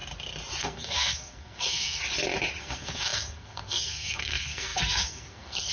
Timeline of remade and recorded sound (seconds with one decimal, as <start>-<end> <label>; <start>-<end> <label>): 0.0-0.6 recorded; 0.6-2.0 remade; 2.0-2.6 recorded; 2.6-5.7 remade